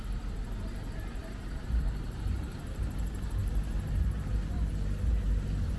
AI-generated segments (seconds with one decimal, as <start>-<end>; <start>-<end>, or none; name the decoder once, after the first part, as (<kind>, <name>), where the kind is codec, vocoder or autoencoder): 1.2-2.6 (vocoder, BigVGAN v2); 3.4-4.3